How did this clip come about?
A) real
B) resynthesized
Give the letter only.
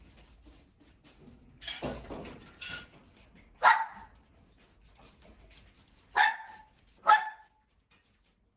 A